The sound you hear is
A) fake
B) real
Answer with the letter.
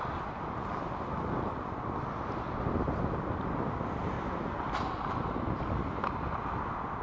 B